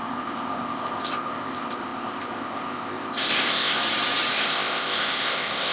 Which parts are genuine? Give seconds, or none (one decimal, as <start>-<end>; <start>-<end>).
3.8-4.3